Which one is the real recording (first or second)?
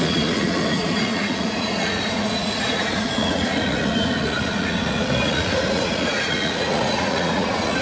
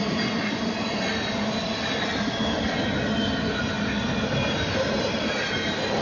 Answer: second